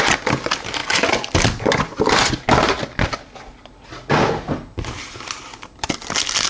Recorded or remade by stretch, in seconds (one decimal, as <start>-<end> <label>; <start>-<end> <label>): 0.0-6.5 recorded

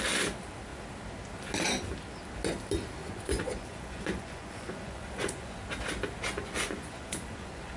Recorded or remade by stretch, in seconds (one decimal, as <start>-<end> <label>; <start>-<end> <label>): 0.0-3.0 recorded; 3.0-5.6 remade; 5.6-6.3 recorded; 6.3-7.8 remade

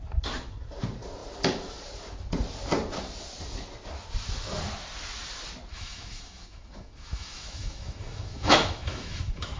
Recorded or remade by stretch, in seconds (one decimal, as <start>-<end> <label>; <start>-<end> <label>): 0.0-5.7 recorded; 5.7-9.6 remade

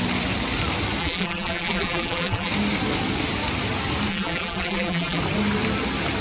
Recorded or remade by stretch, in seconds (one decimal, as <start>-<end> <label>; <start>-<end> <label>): 0.0-1.0 recorded; 1.0-2.5 remade; 2.5-4.1 recorded; 4.1-5.2 remade; 5.2-6.2 recorded

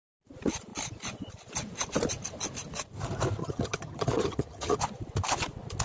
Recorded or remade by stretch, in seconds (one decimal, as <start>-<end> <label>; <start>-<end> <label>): 0.0-3.4 recorded; 3.4-4.8 remade; 4.8-5.8 recorded